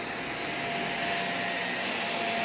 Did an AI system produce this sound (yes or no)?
no